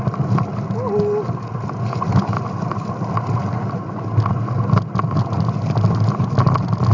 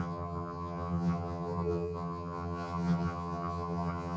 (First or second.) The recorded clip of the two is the first